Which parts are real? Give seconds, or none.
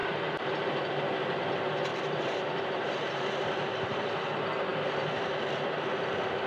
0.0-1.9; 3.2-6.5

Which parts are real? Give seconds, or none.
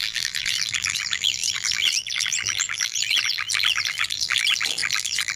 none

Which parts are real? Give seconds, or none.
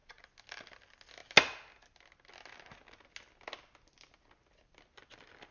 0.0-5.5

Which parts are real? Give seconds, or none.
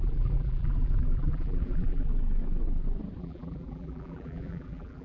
2.1-3.2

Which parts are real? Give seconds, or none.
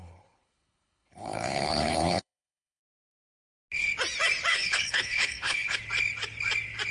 2.8-4.5; 5.8-6.9